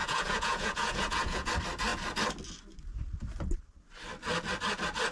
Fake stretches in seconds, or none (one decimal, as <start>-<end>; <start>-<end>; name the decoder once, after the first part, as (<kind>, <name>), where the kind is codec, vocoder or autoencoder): 0.0-1.5 (vocoder, Vocos)